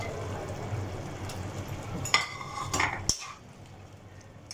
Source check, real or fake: real